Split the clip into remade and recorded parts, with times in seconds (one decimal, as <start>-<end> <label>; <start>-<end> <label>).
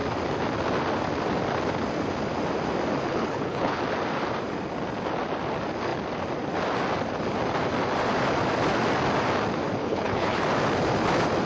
0.0-3.1 recorded; 3.1-3.8 remade; 3.8-9.8 recorded; 9.8-10.4 remade; 10.4-11.5 recorded